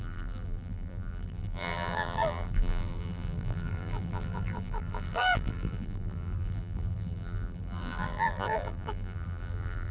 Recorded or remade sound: remade